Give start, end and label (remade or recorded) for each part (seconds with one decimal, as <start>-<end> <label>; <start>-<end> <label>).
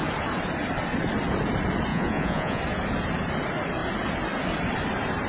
0.0-1.9 recorded; 1.9-2.6 remade; 2.6-5.3 recorded